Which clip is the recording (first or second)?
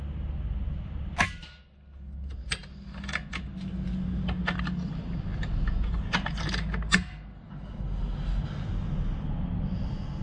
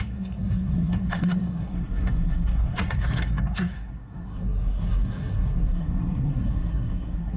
first